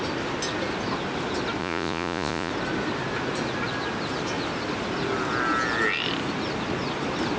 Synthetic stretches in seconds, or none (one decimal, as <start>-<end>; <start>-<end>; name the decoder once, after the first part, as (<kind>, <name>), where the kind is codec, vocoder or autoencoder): 1.6-2.5 (vocoder, Vocos)